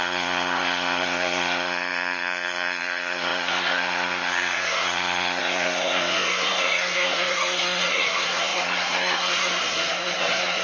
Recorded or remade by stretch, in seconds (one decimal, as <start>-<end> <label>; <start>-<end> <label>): 0.0-10.6 remade